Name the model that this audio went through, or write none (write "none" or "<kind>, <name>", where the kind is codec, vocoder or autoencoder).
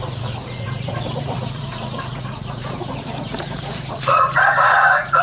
vocoder, Vocos